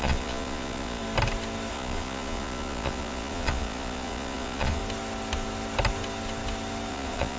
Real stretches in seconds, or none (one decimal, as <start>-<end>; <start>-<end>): 1.0-1.7; 4.8-6.9

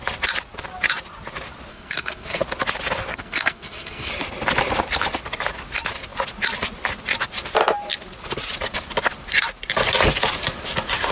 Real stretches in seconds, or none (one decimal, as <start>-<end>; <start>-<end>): 0.0-1.7; 2.4-3.1; 4.1-11.1

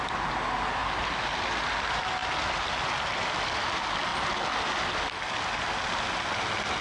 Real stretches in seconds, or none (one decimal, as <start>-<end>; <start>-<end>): 0.0-6.8

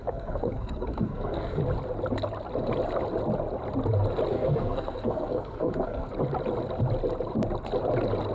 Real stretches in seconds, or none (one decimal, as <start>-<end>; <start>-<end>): 1.6-4.3; 6.1-8.3

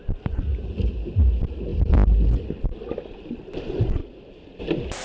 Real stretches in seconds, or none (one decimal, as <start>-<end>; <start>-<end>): 0.0-5.0

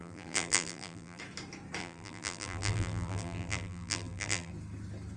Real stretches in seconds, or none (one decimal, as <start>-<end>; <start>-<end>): 1.2-1.8; 4.5-5.2